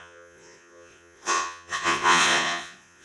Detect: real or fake fake